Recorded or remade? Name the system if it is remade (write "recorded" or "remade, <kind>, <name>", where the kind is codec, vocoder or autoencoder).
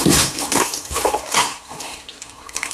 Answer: remade, codec, SNAC